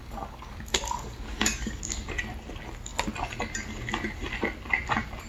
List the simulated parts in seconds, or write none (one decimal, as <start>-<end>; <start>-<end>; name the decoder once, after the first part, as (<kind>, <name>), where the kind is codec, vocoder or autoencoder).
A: 0.0-1.8 (codec, DAC)